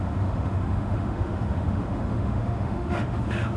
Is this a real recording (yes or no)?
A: no